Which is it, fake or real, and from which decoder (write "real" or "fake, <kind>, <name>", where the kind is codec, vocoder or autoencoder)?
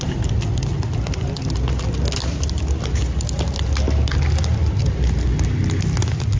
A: real